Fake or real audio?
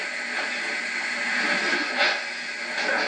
real